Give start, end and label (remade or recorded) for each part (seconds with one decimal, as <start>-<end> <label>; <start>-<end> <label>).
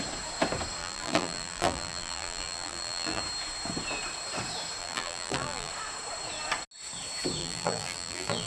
0.0-0.8 recorded; 0.8-3.2 remade; 3.2-4.8 recorded; 4.8-5.7 remade; 5.7-7.4 recorded; 7.4-8.5 remade